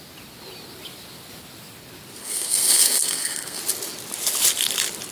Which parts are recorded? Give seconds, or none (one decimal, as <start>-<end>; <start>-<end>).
0.0-2.2; 3.6-5.1